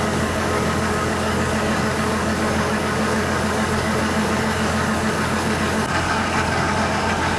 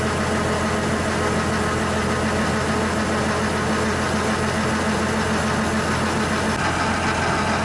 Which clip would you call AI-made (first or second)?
first